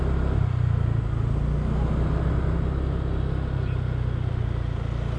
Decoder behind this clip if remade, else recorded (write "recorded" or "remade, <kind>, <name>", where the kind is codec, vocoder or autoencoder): recorded